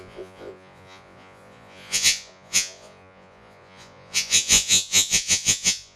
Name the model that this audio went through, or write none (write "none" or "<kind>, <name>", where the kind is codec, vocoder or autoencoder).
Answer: vocoder, Vocos